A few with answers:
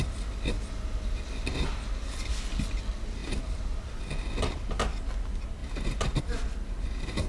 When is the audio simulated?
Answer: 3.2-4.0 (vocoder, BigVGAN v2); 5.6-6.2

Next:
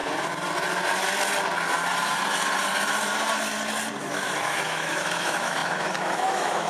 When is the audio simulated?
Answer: 4.0-6.7 (autoencoder, DAC-VAE)

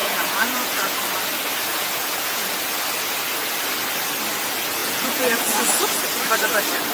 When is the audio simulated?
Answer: 0.0-1.0 (vocoder, Vocos); 1.7-2.5; 4.8-5.9

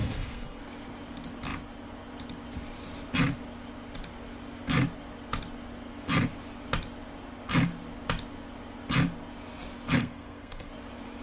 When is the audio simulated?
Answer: 0.0-0.6 (codec, SNAC); 10.0-10.7